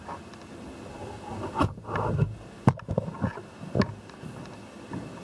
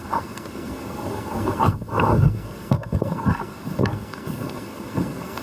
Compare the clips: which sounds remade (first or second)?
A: second